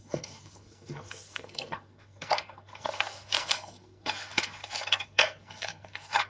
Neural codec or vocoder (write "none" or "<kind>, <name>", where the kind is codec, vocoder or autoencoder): codec, SNAC